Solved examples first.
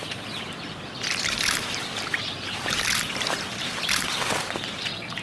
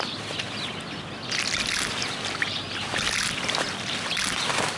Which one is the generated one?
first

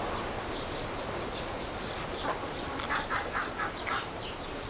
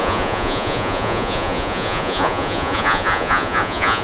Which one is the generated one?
second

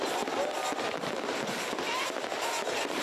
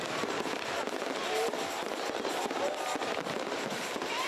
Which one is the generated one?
second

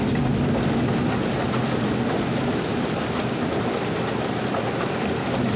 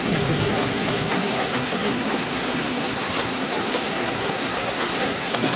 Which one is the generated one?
second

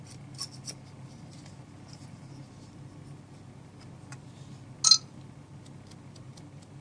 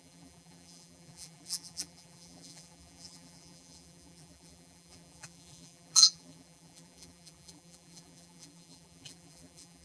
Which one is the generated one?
second